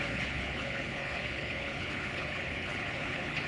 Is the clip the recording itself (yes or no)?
no